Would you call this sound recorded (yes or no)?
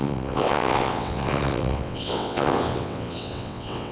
no